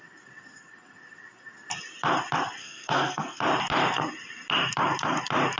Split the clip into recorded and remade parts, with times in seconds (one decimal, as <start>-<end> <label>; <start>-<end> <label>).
0.0-2.6 recorded; 2.6-3.4 remade; 3.4-5.6 recorded